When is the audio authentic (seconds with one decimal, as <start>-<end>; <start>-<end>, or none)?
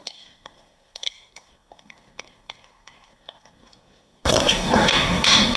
none